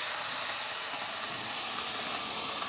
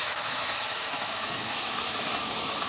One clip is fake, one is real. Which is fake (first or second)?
second